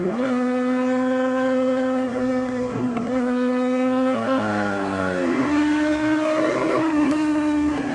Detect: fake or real fake